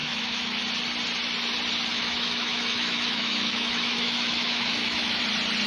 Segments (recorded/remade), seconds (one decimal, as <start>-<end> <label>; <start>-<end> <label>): 0.0-0.6 remade; 0.6-1.9 recorded; 1.9-5.2 remade; 5.2-5.7 recorded